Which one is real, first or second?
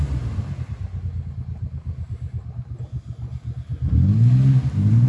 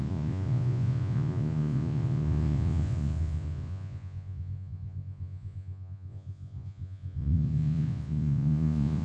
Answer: first